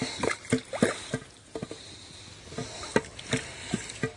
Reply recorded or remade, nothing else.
recorded